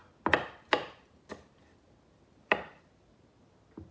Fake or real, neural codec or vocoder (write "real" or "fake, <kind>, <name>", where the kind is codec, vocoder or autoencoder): real